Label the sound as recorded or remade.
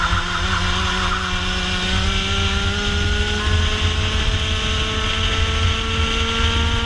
recorded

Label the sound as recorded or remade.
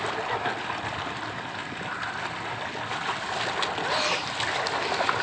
recorded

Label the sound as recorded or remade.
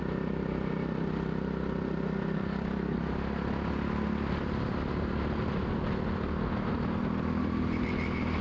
recorded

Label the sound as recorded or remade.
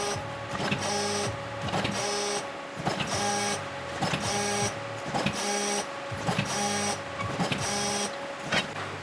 recorded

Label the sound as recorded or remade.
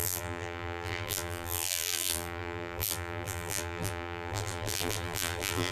remade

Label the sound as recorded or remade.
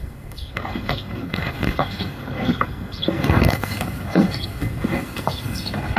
remade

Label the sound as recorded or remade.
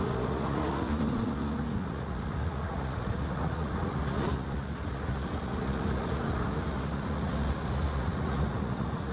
remade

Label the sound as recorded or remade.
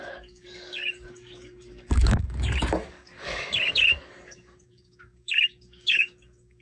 remade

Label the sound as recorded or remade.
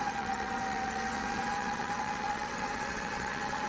remade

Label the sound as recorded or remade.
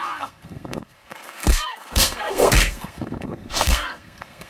remade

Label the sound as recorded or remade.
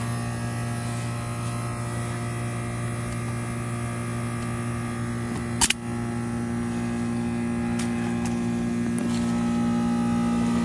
recorded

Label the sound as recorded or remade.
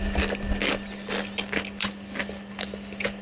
recorded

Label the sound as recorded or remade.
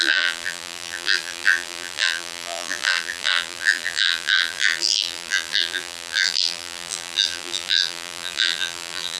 remade